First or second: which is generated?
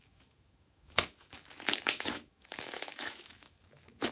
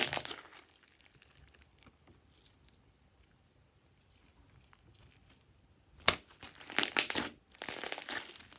first